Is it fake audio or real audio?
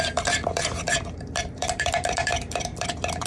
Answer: fake